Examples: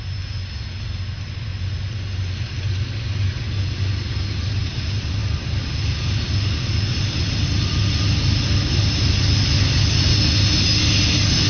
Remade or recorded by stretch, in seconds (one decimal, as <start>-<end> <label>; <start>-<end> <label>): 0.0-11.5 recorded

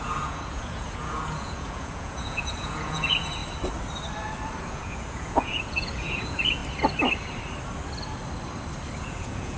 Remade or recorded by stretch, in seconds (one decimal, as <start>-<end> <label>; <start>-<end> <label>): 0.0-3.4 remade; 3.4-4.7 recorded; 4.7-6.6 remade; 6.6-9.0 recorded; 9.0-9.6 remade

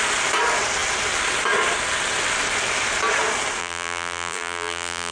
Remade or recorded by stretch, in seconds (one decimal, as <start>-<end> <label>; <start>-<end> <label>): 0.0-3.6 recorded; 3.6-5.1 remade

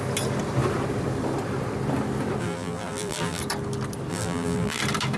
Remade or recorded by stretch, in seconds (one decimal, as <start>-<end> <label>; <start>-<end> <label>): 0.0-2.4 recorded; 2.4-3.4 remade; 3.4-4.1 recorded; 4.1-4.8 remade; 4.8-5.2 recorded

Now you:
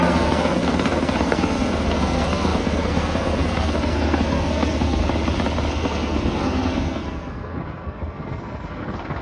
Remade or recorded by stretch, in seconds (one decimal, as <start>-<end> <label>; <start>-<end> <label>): 0.0-5.0 remade; 5.0-5.7 recorded; 5.7-9.2 remade

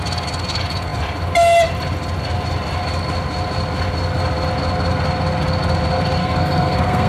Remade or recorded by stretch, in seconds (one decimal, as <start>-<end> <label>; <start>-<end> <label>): 0.0-6.2 recorded; 6.2-7.1 remade